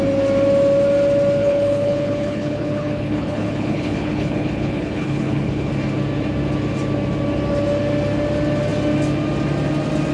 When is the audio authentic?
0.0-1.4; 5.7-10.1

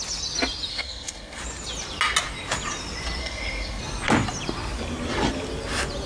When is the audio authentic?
0.0-0.7; 1.4-3.2; 3.8-6.1

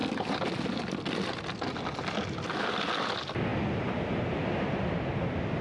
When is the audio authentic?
0.0-5.6

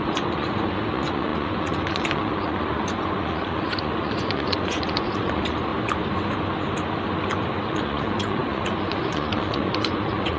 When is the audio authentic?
5.7-7.6

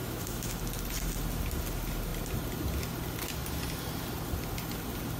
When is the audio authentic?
0.6-5.2

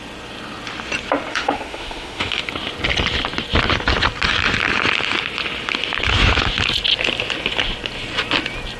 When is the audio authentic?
0.0-1.3; 2.4-8.8

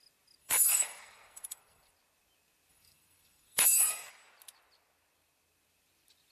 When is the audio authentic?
0.0-0.4; 1.9-2.7; 4.1-6.3

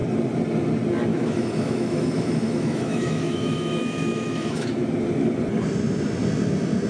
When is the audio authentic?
0.0-1.1; 4.8-6.9